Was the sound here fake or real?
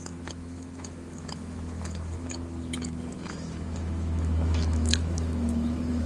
fake